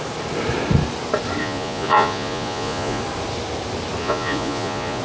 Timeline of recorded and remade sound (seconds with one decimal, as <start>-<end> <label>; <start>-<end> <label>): 0.0-1.4 recorded; 1.4-3.0 remade; 3.0-4.0 recorded; 4.0-5.0 remade

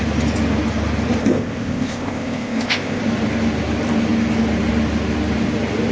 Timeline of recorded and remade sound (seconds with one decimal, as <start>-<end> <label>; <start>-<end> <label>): 0.0-1.2 recorded; 1.2-3.0 remade; 3.0-5.9 recorded

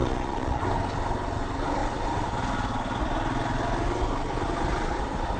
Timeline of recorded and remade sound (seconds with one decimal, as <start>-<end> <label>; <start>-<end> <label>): 0.0-0.6 remade; 0.6-5.4 recorded

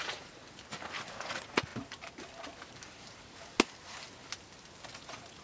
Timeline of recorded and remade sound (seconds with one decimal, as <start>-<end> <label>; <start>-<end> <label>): 0.0-0.4 remade; 0.4-1.2 recorded; 1.2-1.7 remade; 1.7-4.9 recorded; 4.9-5.4 remade

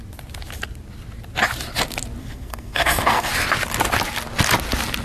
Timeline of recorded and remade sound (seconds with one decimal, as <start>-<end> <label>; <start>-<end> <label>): 0.0-2.2 recorded; 2.2-3.3 remade; 3.3-5.0 recorded